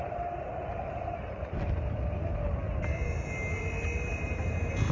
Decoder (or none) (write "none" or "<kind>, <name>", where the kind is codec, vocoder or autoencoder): none